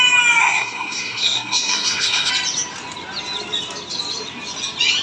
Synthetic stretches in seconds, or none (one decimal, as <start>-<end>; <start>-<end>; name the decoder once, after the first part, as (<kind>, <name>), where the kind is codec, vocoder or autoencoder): 0.4-2.3 (codec, SNAC)